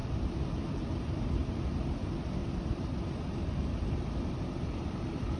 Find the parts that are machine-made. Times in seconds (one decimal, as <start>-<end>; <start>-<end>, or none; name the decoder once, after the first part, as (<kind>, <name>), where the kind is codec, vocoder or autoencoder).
0.0-1.4 (vocoder, BigVGAN v2); 1.9-2.4; 3.9-5.4

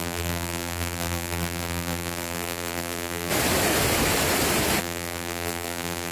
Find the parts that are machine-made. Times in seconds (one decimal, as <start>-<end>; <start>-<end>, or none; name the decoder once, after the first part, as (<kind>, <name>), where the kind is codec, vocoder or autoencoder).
0.0-3.3 (vocoder, BigVGAN v2); 4.8-6.1

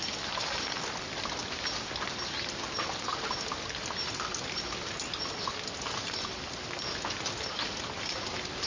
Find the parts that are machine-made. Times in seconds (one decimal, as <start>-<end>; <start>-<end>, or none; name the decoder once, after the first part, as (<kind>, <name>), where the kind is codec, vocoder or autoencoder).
none

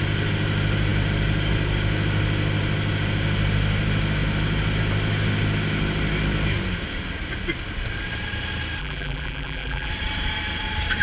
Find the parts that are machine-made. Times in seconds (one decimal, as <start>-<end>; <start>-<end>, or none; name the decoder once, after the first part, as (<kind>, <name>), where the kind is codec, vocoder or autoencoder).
8.8-9.9 (vocoder, BigVGAN v2)